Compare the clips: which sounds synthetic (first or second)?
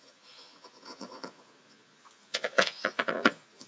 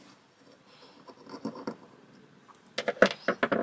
first